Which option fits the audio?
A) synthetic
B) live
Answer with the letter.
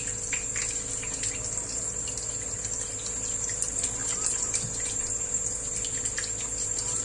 B